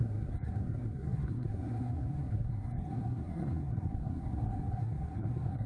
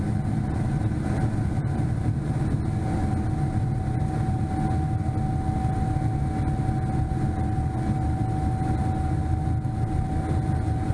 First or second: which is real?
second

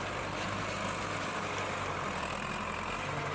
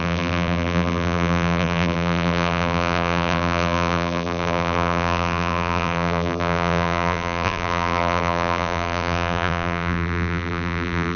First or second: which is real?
first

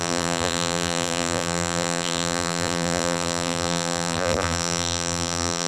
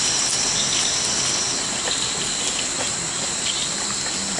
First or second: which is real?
second